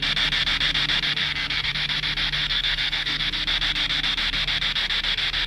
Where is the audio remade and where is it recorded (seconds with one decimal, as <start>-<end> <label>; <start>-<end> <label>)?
0.0-1.2 recorded; 1.2-1.7 remade; 1.7-2.4 recorded; 2.4-3.2 remade; 3.2-5.5 recorded